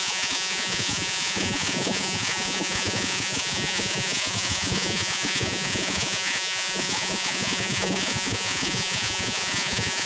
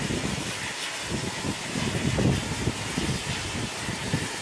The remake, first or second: first